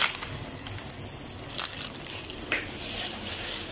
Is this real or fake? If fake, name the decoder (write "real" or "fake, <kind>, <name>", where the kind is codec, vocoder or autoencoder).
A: real